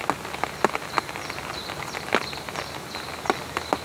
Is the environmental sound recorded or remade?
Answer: recorded